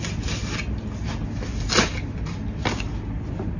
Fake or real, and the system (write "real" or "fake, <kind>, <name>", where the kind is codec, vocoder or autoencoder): real